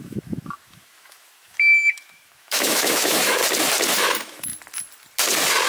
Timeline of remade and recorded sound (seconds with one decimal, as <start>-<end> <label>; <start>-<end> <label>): 0.0-3.4 remade; 3.4-3.9 recorded; 3.9-4.5 remade; 4.5-5.7 recorded